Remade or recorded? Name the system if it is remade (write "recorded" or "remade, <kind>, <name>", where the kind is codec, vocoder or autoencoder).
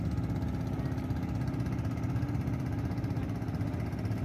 recorded